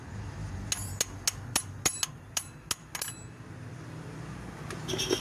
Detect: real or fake real